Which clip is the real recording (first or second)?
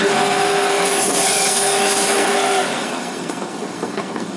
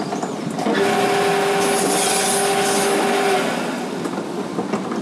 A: second